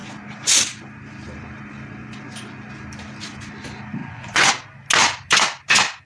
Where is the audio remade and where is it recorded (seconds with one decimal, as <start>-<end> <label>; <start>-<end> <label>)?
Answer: 0.0-4.0 recorded; 4.0-4.5 remade; 4.5-6.0 recorded